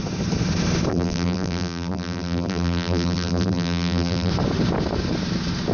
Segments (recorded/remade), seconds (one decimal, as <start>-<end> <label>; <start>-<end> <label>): 0.0-0.9 recorded; 0.9-4.3 remade; 4.3-5.7 recorded